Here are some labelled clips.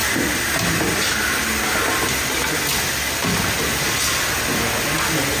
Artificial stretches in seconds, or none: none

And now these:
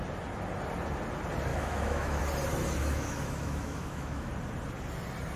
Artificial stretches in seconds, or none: 1.5-2.2 (autoencoder, DAC-VAE); 2.8-4.3

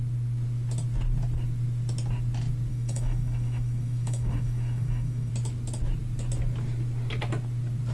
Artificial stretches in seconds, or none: 2.7-5.3 (autoencoder, DAC-VAE)

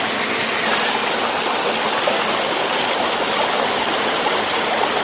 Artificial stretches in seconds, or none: none

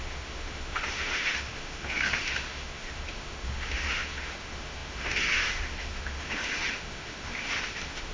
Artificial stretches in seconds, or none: 0.0-8.1 (autoencoder, DAC-VAE)